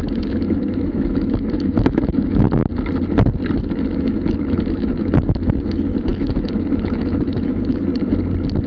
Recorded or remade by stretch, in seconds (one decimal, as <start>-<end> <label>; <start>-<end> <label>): 0.0-2.7 remade; 2.7-3.6 recorded; 3.6-7.9 remade; 7.9-8.7 recorded